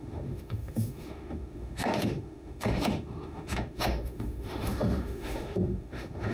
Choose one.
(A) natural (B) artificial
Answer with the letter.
B